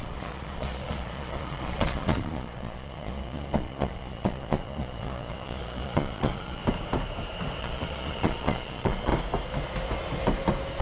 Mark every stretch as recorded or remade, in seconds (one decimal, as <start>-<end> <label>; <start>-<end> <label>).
0.0-6.6 remade; 6.6-7.6 recorded; 7.6-9.1 remade; 9.1-10.8 recorded